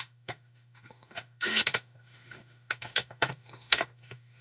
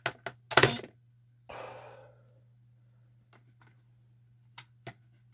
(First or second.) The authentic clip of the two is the second